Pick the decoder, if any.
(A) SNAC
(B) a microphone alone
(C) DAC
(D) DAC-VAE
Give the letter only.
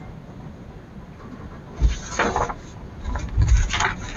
B